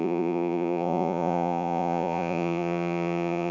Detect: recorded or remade remade